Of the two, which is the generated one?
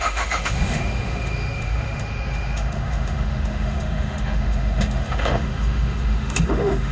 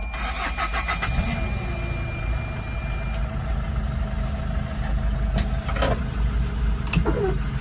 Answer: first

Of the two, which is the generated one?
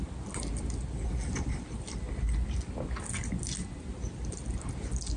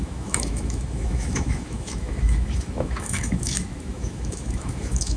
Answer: second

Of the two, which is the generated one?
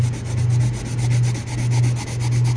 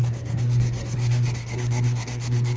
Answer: second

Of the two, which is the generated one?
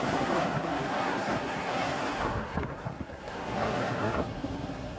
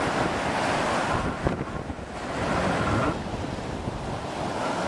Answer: first